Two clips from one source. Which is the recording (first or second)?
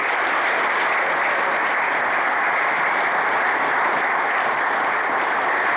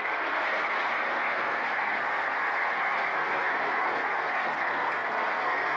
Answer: first